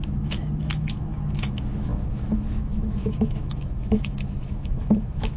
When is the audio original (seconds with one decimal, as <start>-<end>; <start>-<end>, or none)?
none